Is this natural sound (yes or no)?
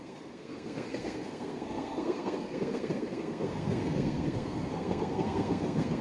no